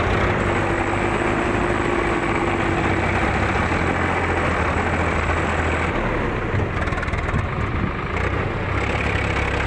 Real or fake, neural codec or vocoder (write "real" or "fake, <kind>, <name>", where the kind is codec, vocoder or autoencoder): real